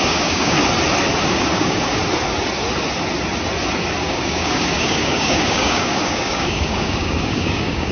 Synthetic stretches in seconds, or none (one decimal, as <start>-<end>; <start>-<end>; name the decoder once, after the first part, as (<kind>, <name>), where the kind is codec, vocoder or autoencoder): 0.0-0.6 (codec, DAC); 1.2-2.0; 4.0-7.9